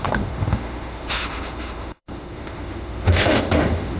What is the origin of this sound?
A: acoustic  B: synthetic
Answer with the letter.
B